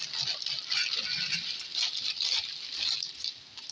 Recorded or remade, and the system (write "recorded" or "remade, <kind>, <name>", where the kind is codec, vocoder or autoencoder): recorded